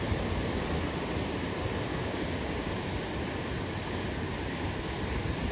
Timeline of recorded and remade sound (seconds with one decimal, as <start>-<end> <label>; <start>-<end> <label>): 0.0-1.9 recorded; 1.9-2.7 remade; 2.7-5.5 recorded